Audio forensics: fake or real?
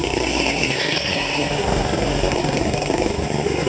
fake